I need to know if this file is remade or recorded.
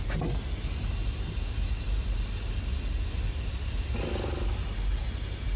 recorded